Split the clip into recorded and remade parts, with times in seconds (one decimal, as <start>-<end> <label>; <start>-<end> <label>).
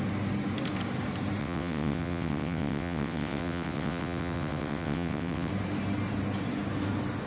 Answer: 0.0-1.4 recorded; 1.4-5.5 remade; 5.5-7.3 recorded